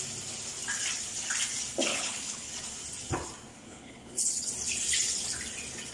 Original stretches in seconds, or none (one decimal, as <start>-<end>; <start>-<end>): 0.0-1.9; 2.5-3.5; 4.5-5.9